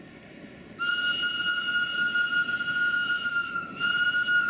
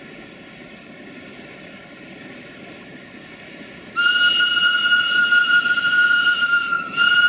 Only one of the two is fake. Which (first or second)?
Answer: second